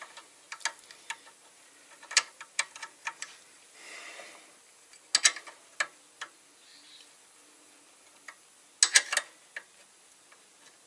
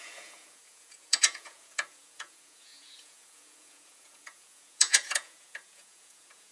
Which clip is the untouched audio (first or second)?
first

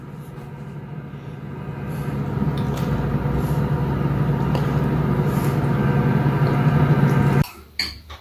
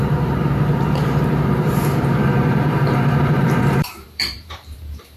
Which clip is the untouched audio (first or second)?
first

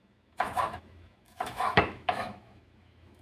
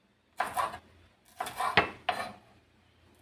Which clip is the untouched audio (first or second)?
second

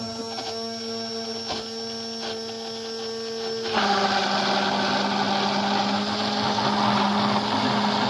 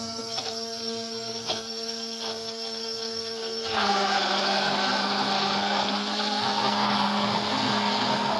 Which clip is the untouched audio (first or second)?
first